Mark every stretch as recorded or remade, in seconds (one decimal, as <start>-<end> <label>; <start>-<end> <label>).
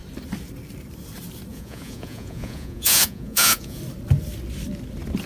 0.0-1.5 recorded; 1.5-3.8 remade; 3.8-5.3 recorded